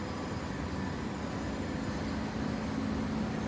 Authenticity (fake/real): real